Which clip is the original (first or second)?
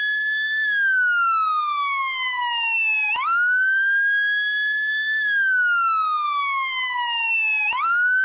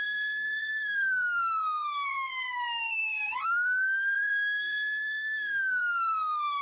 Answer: first